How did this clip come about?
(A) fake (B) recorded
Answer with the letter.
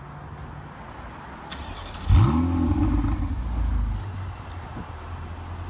B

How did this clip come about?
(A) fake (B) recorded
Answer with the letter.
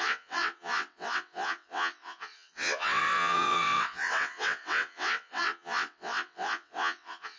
A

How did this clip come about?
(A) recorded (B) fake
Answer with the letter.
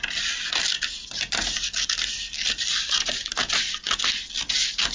A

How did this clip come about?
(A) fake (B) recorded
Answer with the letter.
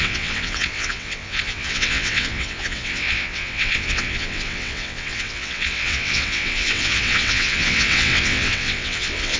A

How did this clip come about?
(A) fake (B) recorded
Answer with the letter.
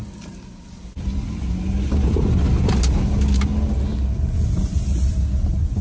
B